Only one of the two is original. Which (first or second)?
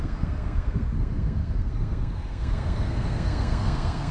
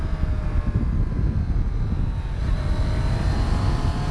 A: second